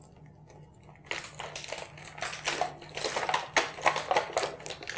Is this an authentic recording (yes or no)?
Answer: yes